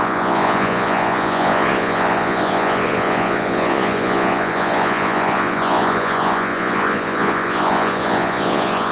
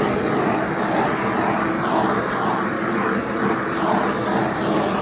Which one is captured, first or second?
second